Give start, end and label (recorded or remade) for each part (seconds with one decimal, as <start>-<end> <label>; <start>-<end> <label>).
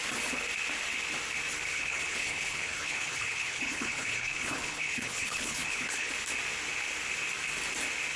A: 0.0-1.7 recorded; 1.7-6.1 remade; 6.1-8.2 recorded